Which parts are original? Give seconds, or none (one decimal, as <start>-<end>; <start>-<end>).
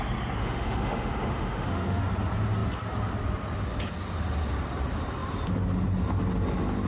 0.0-0.4; 2.0-6.9